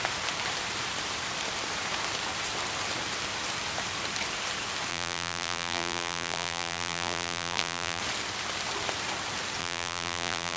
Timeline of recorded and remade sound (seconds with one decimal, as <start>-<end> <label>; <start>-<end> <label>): 0.0-4.9 recorded; 4.9-8.0 remade; 8.0-9.6 recorded; 9.6-10.6 remade